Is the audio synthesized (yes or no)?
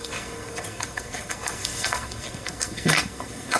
yes